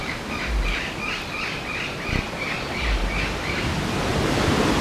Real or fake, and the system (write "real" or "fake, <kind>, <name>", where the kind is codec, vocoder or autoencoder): real